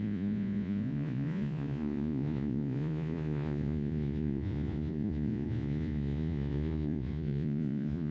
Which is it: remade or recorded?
remade